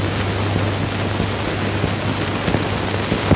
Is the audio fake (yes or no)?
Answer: no